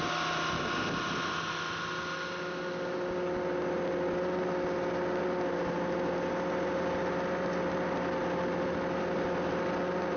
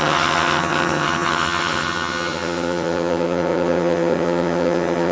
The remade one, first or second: second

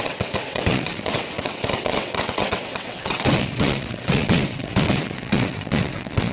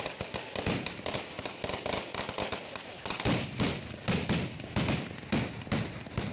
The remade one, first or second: first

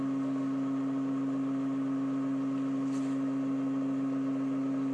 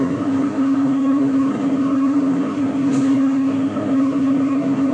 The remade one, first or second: second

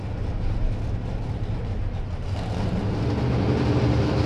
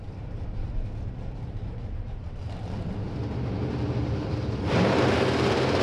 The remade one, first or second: second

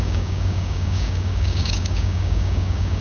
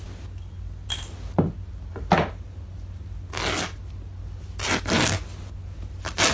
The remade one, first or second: first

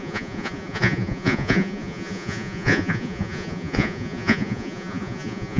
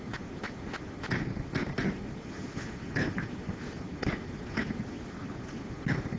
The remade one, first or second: first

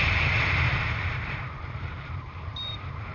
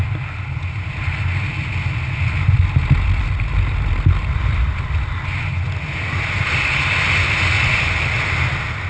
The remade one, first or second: first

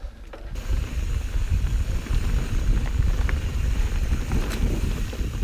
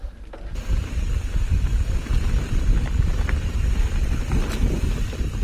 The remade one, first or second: second